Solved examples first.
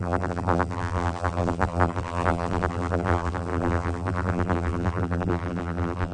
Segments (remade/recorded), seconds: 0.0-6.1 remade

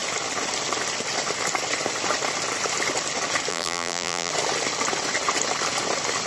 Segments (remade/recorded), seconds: 0.0-3.5 recorded; 3.5-4.3 remade; 4.3-6.3 recorded

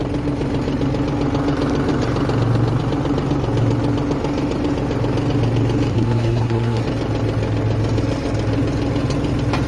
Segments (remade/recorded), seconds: 0.0-5.9 recorded; 5.9-6.8 remade; 6.8-9.7 recorded

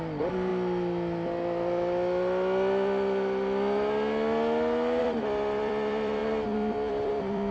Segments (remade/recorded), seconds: 0.0-0.5 remade; 0.5-5.0 recorded; 5.0-7.5 remade